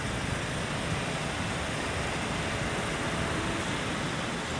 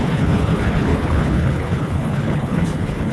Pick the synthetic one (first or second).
second